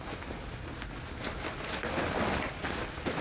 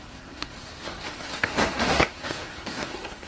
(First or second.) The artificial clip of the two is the second